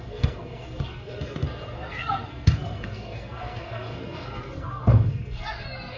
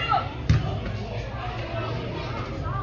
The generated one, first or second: first